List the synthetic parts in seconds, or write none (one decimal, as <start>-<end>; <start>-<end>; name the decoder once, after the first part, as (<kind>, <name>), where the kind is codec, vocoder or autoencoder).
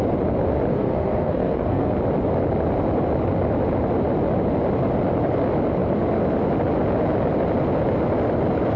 0.7-1.9 (codec, SNAC)